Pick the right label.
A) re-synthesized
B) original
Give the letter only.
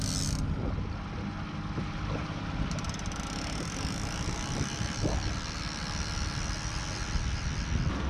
B